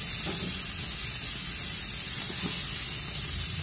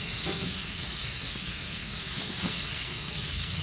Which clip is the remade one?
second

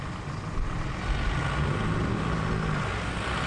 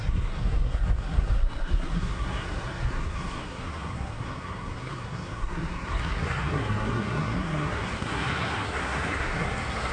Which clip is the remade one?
second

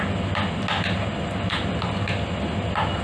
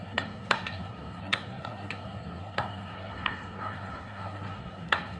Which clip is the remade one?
second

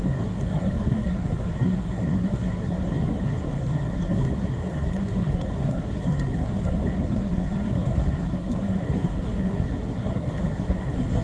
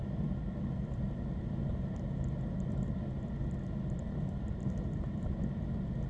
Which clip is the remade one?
first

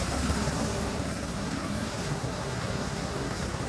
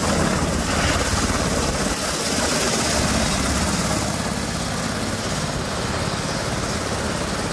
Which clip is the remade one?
first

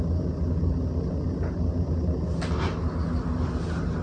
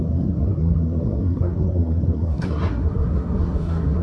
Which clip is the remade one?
second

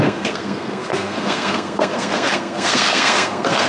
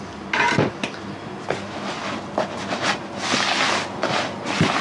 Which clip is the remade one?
first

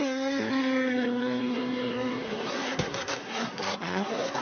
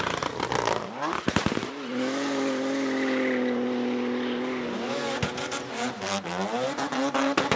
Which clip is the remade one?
first